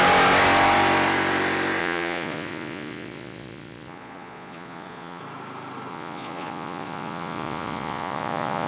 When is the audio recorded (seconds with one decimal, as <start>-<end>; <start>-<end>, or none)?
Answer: 0.0-1.8; 5.2-5.9